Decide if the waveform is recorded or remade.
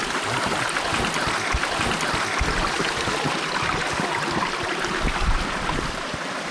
recorded